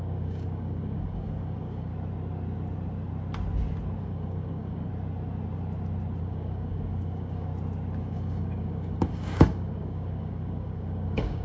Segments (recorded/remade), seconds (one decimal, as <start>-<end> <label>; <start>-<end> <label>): 0.0-1.9 remade; 1.9-4.0 recorded; 4.0-4.9 remade; 4.9-6.2 recorded; 6.2-7.5 remade; 7.5-8.0 recorded; 8.0-11.4 remade